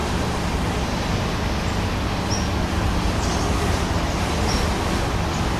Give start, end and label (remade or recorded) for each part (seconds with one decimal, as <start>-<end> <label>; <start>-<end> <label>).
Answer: 0.0-5.6 recorded